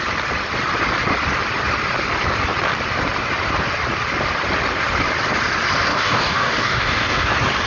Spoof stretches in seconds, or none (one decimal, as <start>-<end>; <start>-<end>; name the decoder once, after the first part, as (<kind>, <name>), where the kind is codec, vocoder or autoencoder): 5.9-7.3 (codec, DAC)